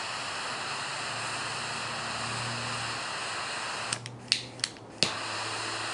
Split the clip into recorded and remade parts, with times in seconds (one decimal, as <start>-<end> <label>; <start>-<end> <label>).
0.0-5.9 recorded